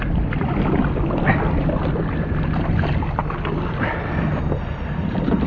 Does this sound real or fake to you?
real